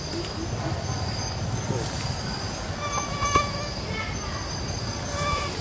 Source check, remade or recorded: recorded